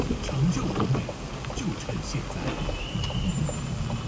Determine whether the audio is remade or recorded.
recorded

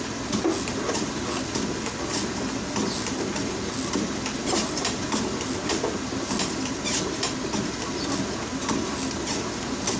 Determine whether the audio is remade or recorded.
recorded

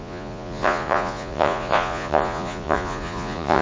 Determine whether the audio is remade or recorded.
remade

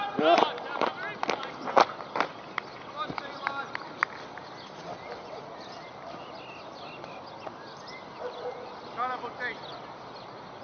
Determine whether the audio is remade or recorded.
recorded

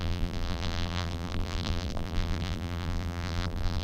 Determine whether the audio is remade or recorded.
remade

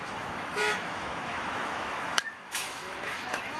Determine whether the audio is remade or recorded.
remade